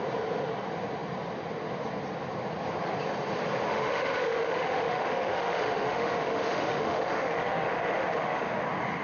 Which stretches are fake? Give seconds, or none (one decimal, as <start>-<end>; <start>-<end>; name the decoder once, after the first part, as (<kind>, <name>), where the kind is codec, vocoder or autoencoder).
3.7-8.6 (autoencoder, DAC-VAE)